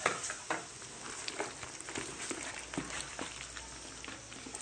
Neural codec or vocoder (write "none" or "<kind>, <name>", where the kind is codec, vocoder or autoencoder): none